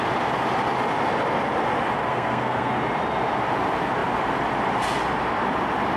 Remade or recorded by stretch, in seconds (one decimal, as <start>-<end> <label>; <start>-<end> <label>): 0.0-2.0 recorded; 2.0-2.7 remade; 2.7-6.0 recorded